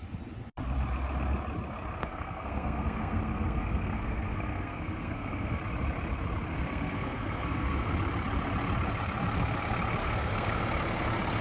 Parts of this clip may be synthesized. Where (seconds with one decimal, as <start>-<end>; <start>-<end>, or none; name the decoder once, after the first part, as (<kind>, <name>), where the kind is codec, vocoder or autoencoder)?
2.0-5.6 (codec, SNAC); 6.5-7.9; 10.0-10.6